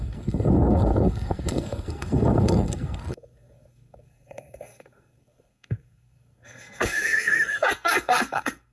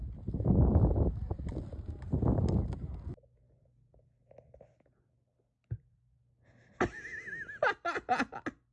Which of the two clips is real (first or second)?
second